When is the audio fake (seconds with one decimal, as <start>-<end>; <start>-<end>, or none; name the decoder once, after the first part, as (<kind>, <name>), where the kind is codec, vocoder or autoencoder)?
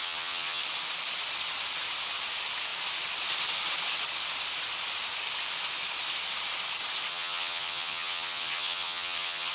0.0-0.6 (vocoder, HiFi-GAN); 7.1-9.5